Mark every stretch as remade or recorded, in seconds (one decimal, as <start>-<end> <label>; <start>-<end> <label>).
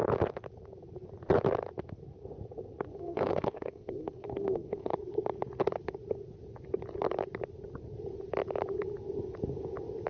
0.0-2.9 recorded; 2.9-4.9 remade; 4.9-10.1 recorded